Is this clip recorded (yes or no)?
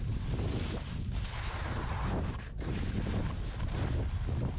yes